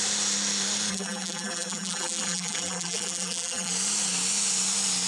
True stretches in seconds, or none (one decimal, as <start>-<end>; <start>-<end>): 0.0-0.9; 3.7-5.1